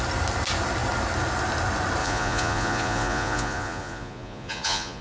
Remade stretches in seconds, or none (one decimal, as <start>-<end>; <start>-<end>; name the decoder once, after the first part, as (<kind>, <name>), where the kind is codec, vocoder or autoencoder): 2.0-5.0 (vocoder, Vocos)